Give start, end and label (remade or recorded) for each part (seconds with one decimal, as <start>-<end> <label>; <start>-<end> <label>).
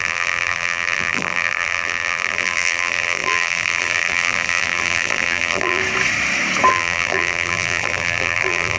0.0-5.8 remade; 5.8-6.7 recorded; 6.7-8.8 remade